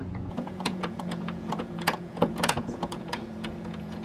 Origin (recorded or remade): remade